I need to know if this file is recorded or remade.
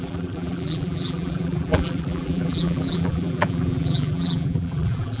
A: remade